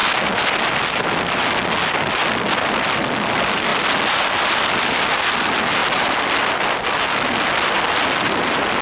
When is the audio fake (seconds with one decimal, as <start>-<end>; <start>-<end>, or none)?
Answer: none